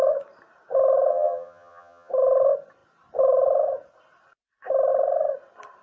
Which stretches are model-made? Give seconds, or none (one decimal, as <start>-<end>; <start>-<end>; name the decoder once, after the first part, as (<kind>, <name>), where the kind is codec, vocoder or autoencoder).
1.1-2.1 (vocoder, HiFi-GAN)